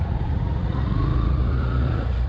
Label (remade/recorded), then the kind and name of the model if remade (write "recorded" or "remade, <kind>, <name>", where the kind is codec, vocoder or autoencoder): remade, vocoder, Vocos